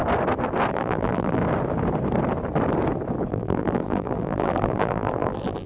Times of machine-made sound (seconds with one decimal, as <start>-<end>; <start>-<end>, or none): 0.7-1.4; 3.3-5.7